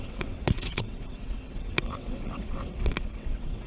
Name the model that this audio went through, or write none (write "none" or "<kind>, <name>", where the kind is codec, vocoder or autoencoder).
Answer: vocoder, WaveNeXt